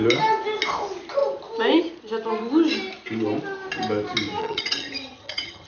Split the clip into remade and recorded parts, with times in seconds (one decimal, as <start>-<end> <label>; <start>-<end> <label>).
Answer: 0.0-4.4 recorded; 4.4-5.7 remade